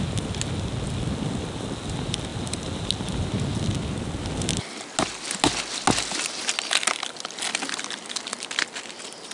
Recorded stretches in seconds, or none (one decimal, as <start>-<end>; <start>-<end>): 0.0-9.3